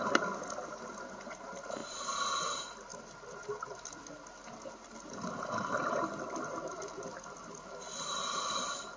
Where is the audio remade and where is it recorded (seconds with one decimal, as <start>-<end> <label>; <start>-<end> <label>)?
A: 0.0-9.0 recorded